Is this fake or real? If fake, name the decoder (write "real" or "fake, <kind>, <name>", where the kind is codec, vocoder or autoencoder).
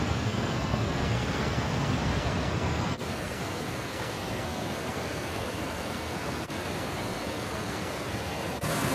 fake, codec, SNAC